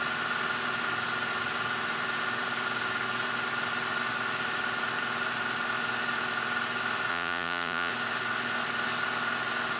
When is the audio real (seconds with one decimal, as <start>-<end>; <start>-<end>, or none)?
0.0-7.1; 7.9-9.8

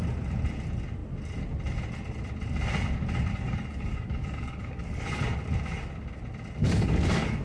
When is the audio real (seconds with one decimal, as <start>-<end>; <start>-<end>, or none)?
0.0-3.3; 5.2-6.6

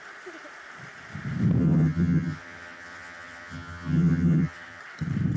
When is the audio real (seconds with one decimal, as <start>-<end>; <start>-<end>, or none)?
0.0-1.6; 4.8-5.4

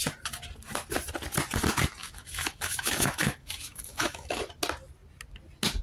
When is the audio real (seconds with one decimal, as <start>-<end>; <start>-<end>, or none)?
0.0-2.0; 4.4-5.8